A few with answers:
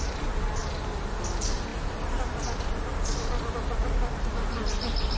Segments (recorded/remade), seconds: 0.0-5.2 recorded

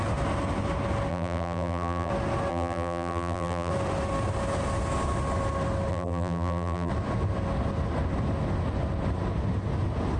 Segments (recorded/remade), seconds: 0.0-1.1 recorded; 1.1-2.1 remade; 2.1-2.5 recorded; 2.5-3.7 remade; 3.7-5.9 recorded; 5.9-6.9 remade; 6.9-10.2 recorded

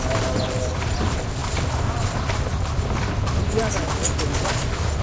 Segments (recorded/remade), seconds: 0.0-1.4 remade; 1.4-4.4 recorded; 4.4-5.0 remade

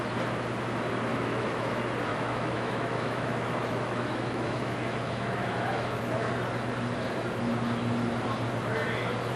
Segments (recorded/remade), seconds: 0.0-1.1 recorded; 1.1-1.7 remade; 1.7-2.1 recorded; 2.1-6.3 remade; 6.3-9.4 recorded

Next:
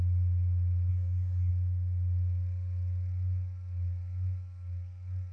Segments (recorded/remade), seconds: 0.0-0.9 recorded; 0.9-1.5 remade; 1.5-5.3 recorded